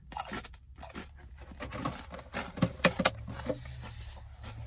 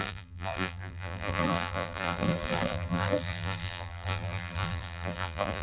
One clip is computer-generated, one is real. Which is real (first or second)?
first